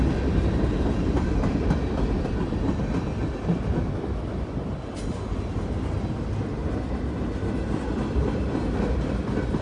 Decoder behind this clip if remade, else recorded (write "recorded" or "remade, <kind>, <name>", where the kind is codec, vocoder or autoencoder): recorded